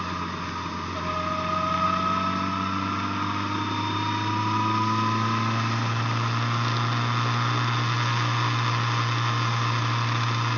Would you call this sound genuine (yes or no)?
yes